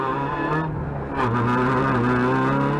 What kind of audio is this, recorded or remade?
recorded